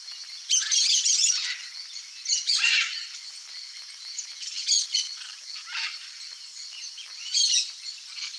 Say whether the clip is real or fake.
real